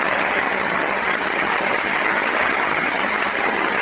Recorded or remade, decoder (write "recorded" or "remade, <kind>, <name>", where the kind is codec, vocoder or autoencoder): remade, vocoder, HiFi-GAN